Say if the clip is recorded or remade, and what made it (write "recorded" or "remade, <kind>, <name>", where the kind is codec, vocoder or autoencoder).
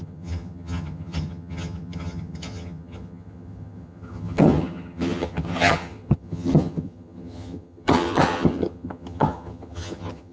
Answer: remade, vocoder, HiFi-GAN